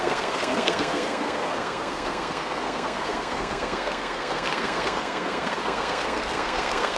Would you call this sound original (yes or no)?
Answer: no